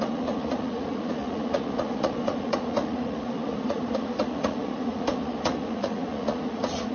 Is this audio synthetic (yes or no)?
yes